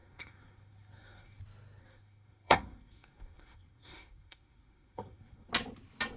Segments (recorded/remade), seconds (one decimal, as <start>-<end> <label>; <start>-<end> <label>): 0.0-1.4 remade; 1.4-1.8 recorded; 1.8-5.5 remade; 5.5-6.2 recorded